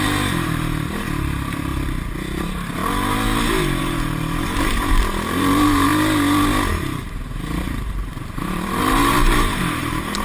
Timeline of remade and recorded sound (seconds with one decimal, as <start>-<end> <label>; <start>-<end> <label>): 0.0-1.7 remade; 1.7-2.4 recorded; 2.4-2.8 remade; 2.8-3.8 recorded; 3.8-5.9 remade; 5.9-6.7 recorded; 6.7-10.2 remade